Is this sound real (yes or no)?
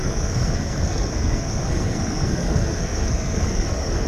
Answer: no